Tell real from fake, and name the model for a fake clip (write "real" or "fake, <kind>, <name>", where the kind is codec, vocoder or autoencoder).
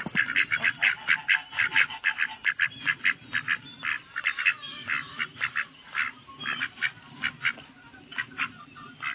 real